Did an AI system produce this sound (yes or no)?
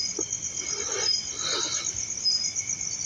no